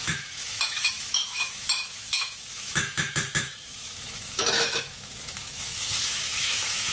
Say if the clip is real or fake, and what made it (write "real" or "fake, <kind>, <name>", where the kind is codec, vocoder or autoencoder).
fake, autoencoder, DAC-VAE